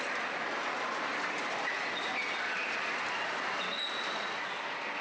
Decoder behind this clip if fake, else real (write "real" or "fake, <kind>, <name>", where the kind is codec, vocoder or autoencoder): real